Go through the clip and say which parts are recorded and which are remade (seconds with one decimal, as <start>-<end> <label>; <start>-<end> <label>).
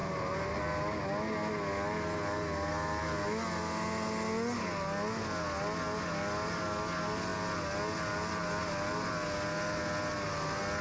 0.0-0.6 remade; 0.6-10.8 recorded